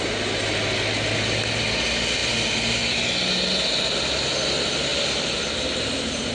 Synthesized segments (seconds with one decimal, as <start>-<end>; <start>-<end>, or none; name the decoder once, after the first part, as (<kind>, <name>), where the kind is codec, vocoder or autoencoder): 4.9-6.3 (vocoder, BigVGAN v2)